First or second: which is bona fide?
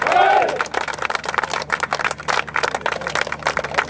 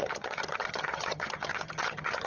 first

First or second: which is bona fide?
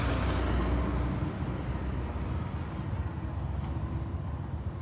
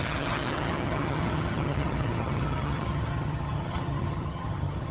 first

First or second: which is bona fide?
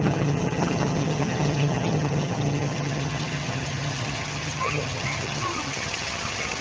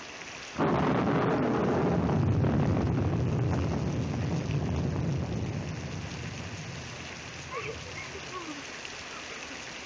second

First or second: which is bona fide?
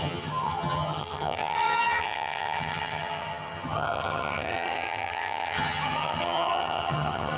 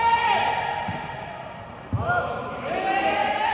second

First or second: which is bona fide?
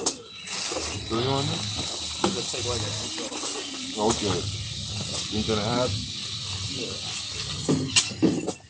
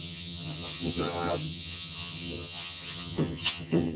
first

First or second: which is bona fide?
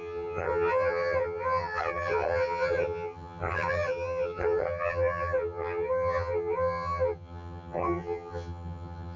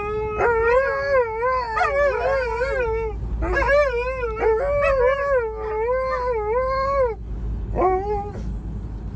second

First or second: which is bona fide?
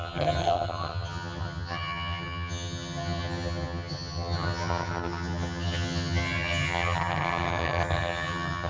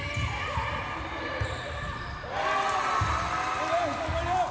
second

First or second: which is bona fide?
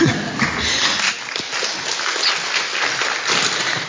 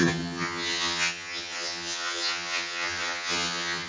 first